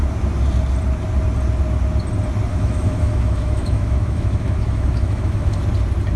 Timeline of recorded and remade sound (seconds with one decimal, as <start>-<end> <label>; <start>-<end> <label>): 0.0-2.5 recorded; 2.5-5.6 remade; 5.6-6.2 recorded